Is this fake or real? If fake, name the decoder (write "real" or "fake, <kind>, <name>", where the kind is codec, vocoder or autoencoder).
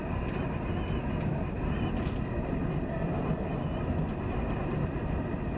real